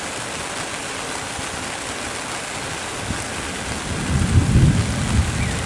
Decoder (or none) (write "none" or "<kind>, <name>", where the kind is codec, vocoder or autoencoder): none